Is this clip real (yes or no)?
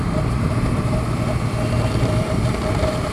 no